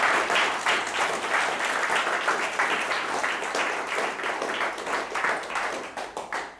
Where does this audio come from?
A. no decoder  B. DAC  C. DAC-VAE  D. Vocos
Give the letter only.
A